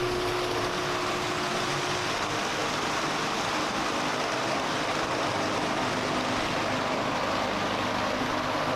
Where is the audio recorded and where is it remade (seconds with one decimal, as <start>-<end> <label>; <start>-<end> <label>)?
0.0-8.8 recorded